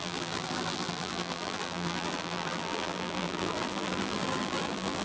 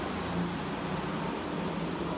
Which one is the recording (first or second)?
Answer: second